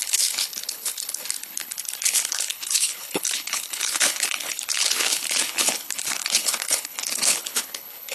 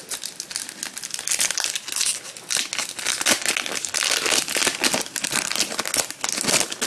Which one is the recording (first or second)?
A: second